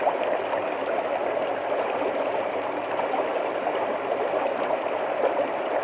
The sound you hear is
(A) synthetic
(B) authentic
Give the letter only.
B